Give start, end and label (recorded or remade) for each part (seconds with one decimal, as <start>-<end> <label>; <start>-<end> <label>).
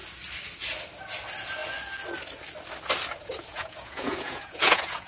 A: 0.0-3.5 recorded; 3.5-5.1 remade